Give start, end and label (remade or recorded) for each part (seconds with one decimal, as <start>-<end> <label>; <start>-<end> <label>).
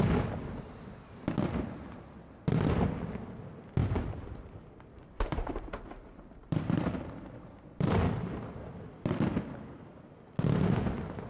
0.0-3.8 recorded; 3.8-7.9 remade; 7.9-11.3 recorded